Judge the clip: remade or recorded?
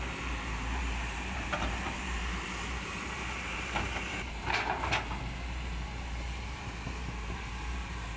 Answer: remade